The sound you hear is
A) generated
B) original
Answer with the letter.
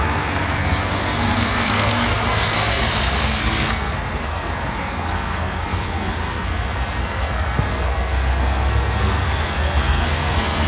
A